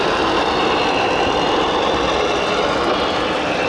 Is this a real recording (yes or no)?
yes